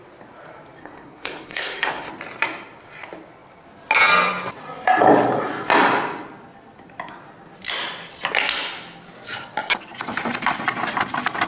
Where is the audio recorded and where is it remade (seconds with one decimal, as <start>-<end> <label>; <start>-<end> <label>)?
0.0-0.8 recorded; 0.8-2.1 remade; 2.1-11.5 recorded